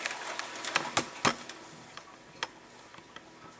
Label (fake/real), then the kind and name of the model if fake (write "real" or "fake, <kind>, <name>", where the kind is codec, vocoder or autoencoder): real